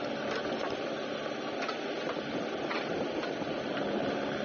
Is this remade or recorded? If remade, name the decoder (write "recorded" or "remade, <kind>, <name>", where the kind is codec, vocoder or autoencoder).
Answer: recorded